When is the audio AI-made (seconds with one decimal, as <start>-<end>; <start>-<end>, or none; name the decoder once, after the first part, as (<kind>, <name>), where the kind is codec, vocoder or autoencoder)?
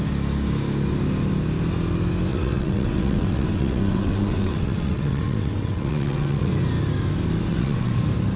2.3-6.5 (vocoder, WaveNeXt); 7.5-8.0